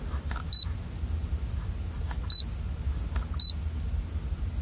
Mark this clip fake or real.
real